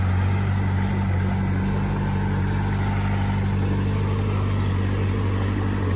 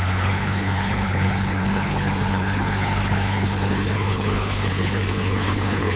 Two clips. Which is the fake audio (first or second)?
second